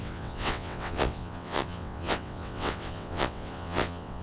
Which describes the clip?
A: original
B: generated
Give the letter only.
B